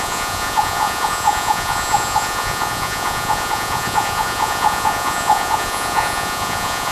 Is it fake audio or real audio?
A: fake